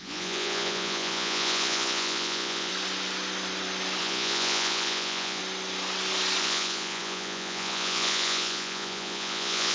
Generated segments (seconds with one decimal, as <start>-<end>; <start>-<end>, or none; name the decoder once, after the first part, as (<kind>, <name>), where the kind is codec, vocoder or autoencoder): 0.0-2.7 (vocoder, Vocos); 4.0-5.4; 6.4-9.7